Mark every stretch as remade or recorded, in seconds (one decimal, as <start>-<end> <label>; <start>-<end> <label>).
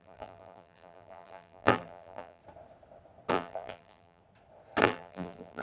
0.0-2.4 remade; 2.4-3.3 recorded; 3.3-4.2 remade; 4.2-4.8 recorded; 4.8-5.6 remade